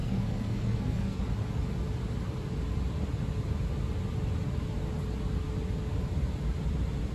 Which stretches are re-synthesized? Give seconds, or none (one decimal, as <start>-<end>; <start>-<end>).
0.0-1.2